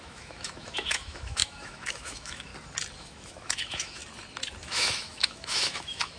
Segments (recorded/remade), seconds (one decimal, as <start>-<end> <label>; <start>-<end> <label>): 0.0-2.5 remade; 2.5-3.0 recorded; 3.0-4.0 remade; 4.0-4.6 recorded; 4.6-6.2 remade